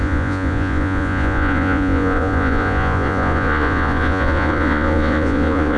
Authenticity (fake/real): fake